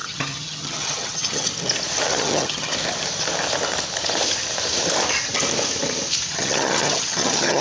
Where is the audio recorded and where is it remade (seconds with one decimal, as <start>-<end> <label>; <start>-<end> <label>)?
0.0-1.5 remade; 1.5-2.1 recorded; 2.1-2.7 remade; 2.7-6.3 recorded; 6.3-7.6 remade